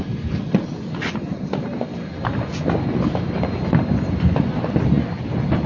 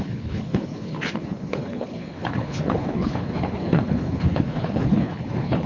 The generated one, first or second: second